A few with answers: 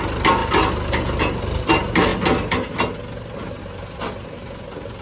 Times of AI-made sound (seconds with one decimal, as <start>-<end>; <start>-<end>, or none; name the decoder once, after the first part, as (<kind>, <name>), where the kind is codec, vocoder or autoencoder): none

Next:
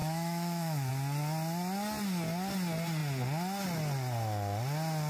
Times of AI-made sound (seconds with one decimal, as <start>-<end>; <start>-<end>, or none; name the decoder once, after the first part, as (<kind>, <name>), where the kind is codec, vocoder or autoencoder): 0.0-0.9 (autoencoder, DAC-VAE)

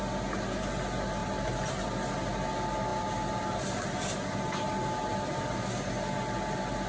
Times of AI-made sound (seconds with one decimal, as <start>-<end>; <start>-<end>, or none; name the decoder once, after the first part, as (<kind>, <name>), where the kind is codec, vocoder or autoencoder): none

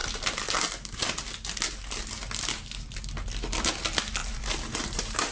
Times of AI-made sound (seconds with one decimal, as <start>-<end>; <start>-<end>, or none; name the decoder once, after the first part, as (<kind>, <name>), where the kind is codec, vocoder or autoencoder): 4.2-5.3 (vocoder, BigVGAN v2)

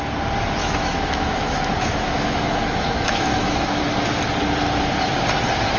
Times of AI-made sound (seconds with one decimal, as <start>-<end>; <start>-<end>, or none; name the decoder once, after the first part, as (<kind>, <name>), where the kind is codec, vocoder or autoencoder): 0.6-3.8 (autoencoder, DAC-VAE)